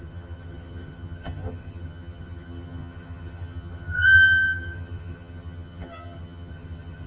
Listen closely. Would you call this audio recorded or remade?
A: remade